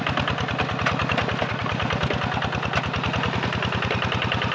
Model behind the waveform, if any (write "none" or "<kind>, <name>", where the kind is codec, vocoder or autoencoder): none